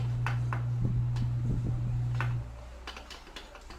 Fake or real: real